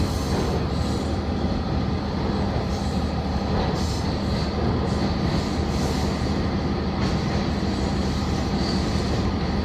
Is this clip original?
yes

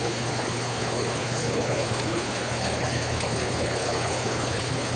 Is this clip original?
no